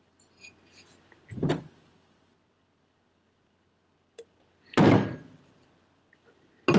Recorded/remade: recorded